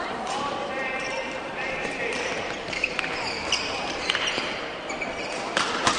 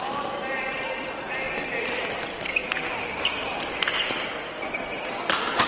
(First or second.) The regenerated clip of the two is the first